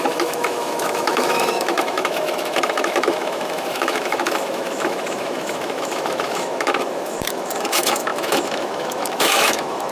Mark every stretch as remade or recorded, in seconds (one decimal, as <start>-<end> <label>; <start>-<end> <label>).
0.0-9.9 remade